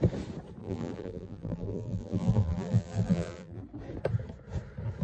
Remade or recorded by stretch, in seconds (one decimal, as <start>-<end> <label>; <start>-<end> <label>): 0.0-0.6 recorded; 0.6-3.6 remade; 3.6-5.0 recorded